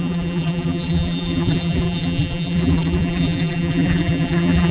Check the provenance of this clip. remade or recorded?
remade